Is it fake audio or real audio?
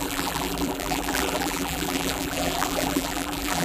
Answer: fake